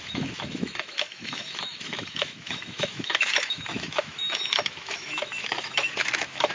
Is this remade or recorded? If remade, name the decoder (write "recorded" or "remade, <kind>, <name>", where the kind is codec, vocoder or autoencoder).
remade, autoencoder, DAC-VAE